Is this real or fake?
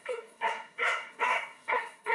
fake